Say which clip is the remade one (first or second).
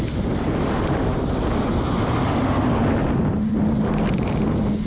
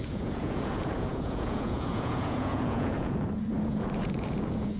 second